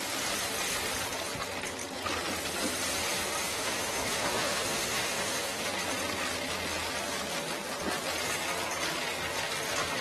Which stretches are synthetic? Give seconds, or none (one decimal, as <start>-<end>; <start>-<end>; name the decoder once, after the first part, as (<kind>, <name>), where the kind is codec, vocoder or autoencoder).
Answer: 3.4-5.7 (autoencoder, DAC-VAE)